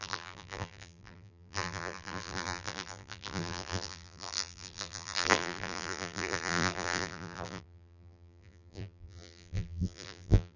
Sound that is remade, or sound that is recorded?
remade